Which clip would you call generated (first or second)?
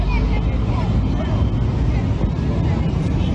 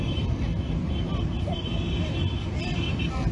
second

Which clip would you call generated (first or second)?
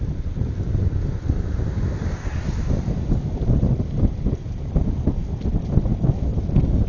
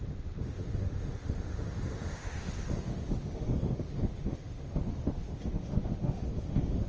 second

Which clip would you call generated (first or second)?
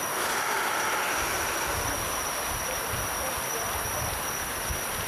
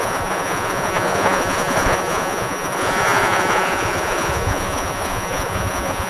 second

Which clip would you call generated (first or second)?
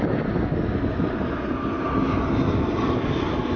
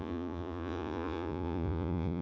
second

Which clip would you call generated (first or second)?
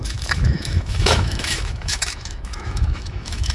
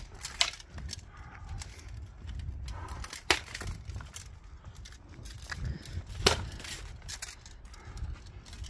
first